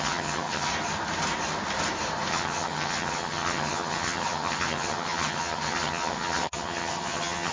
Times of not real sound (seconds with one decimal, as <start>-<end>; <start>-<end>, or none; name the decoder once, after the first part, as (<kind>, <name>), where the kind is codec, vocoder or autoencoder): 0.0-0.7 (vocoder, HiFi-GAN); 2.3-7.5